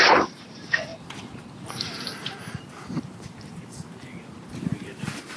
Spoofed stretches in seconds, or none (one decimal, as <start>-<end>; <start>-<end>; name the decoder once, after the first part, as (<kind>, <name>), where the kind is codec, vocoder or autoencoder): 0.0-0.9 (vocoder, BigVGAN v2); 1.7-5.4